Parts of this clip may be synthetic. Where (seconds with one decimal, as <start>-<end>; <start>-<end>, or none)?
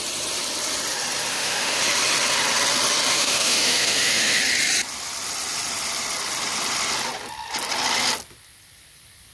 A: 1.3-1.8; 3.1-4.4